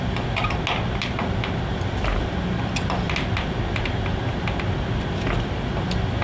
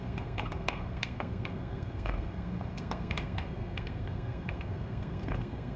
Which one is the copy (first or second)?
second